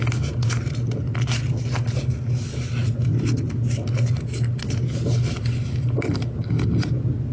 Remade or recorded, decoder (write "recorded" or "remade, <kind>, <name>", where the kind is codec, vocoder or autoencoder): recorded